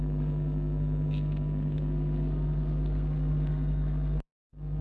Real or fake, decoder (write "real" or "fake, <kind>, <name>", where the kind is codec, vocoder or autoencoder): fake, codec, SNAC